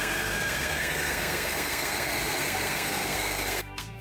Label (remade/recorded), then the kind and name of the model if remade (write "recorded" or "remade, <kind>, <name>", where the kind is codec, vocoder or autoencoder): remade, codec, SNAC